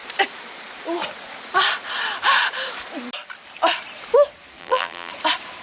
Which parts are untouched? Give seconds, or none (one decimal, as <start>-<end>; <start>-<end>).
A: 0.0-4.6; 5.1-5.6